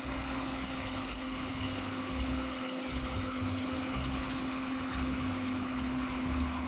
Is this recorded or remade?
remade